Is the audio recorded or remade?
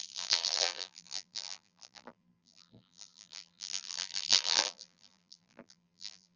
remade